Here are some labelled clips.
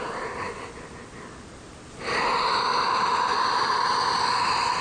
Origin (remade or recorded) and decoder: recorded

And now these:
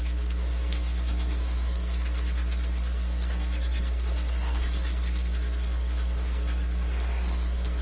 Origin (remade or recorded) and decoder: remade, codec, SNAC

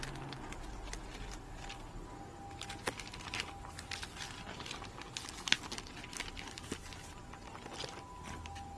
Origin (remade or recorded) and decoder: recorded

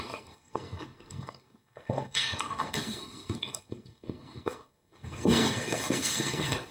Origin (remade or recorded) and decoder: remade, codec, SNAC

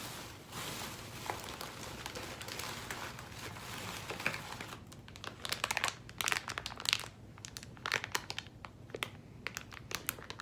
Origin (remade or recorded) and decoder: recorded